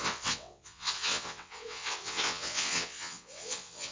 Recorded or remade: remade